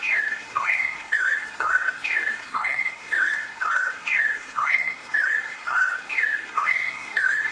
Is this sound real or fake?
fake